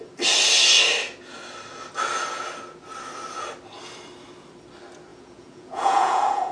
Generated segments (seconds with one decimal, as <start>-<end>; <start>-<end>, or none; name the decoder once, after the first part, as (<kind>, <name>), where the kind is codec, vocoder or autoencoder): 5.1-6.5 (vocoder, Vocos)